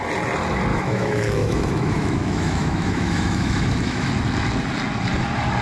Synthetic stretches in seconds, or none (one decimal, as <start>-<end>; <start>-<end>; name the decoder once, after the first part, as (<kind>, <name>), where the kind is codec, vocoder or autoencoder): 0.7-4.1 (autoencoder, DAC-VAE)